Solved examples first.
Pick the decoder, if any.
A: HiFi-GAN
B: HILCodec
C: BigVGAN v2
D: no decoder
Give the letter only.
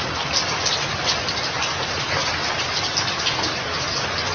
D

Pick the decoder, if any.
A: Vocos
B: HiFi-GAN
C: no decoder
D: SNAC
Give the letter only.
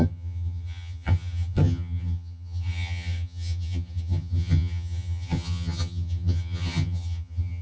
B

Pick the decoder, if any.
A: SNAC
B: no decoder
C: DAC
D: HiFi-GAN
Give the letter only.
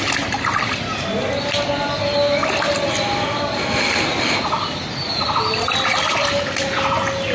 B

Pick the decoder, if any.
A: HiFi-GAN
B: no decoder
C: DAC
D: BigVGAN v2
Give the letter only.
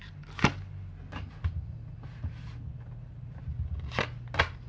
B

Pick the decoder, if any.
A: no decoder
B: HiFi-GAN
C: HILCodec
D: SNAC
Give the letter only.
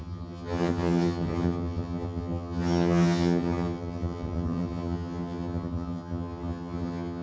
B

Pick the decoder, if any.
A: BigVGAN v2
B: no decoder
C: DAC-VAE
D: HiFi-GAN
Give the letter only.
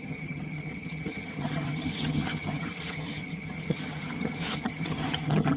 D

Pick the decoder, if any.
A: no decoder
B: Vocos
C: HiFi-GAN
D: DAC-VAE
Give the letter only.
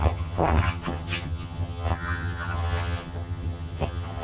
C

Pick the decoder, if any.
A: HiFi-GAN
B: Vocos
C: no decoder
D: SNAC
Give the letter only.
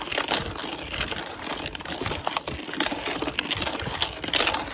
C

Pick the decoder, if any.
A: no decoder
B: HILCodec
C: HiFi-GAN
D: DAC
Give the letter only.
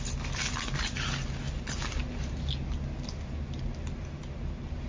A